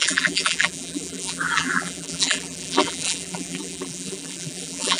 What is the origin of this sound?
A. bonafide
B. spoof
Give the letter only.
B